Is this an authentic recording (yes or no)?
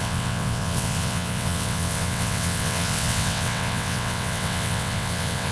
no